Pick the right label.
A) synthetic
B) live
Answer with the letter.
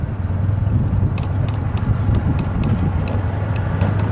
B